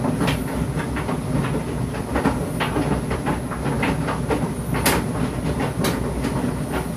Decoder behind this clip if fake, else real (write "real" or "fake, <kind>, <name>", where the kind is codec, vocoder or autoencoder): real